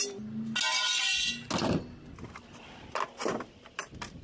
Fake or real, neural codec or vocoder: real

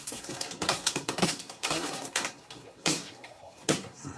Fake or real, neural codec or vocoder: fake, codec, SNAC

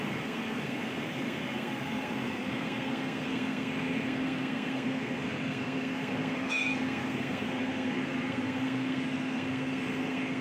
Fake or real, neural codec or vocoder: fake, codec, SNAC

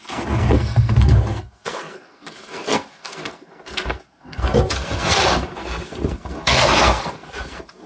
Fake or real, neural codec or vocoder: fake, codec, SNAC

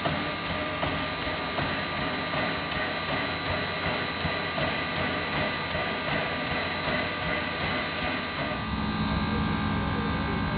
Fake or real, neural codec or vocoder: real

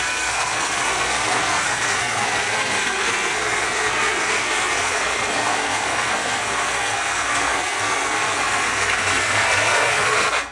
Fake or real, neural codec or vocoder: fake, codec, SNAC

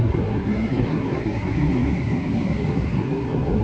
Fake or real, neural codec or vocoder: fake, codec, SNAC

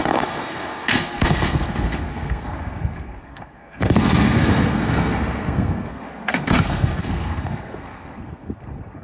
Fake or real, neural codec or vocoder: fake, codec, SNAC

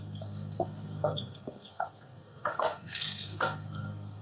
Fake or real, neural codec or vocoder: fake, codec, SNAC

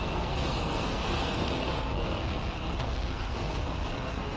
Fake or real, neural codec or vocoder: fake, codec, SNAC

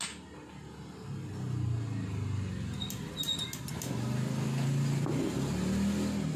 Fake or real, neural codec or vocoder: real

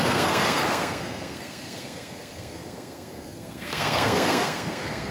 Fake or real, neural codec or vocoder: fake, codec, SNAC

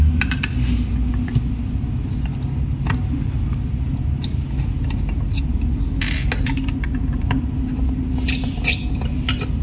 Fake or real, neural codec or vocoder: real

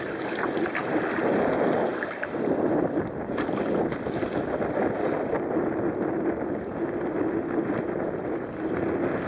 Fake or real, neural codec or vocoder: real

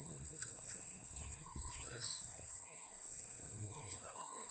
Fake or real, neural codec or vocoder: fake, codec, SNAC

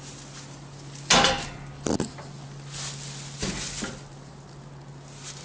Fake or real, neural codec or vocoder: real